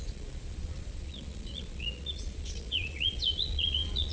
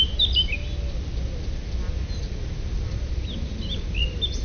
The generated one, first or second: first